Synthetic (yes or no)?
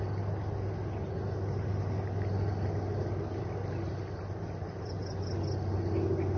no